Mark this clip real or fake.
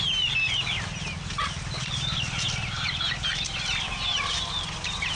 fake